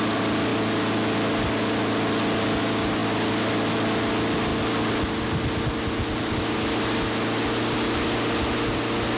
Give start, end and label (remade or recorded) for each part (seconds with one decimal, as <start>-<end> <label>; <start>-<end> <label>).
0.0-9.2 recorded